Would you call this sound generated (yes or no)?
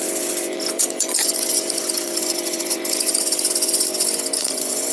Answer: yes